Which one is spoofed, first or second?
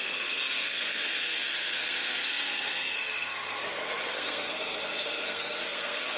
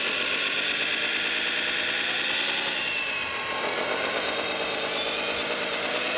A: first